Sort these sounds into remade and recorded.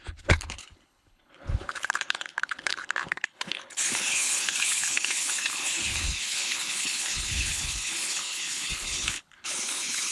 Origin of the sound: remade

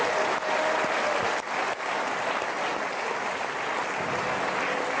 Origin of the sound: recorded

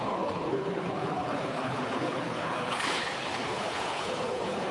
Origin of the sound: remade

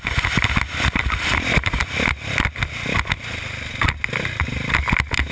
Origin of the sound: recorded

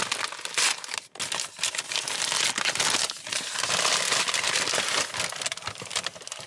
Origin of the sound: recorded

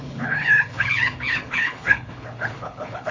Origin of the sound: remade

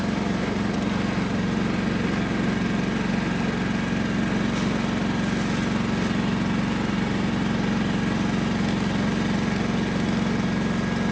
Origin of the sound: recorded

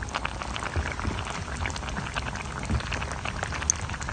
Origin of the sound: recorded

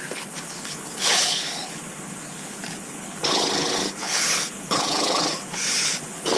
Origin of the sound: remade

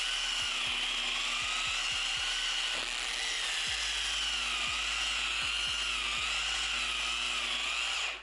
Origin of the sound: recorded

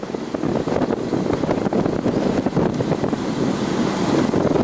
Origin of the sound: recorded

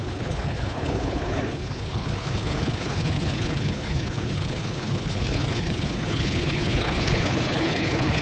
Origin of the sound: remade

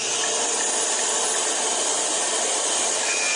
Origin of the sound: recorded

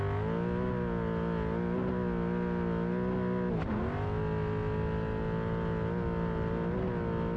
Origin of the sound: recorded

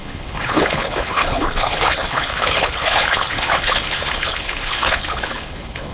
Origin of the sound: remade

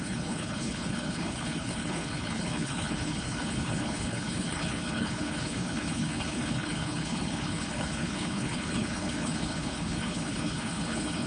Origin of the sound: remade